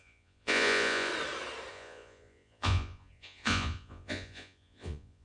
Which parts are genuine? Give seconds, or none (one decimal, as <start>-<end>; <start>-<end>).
1.1-1.7